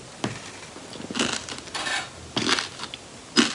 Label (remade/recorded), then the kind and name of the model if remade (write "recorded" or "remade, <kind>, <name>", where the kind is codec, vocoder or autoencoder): recorded